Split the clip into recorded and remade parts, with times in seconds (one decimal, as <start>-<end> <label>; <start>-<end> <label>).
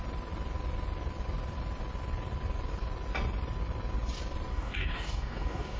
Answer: 0.0-4.5 recorded; 4.5-5.8 remade